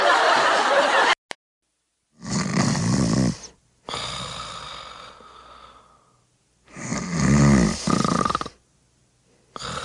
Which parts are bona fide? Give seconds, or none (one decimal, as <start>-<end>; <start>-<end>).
0.0-9.8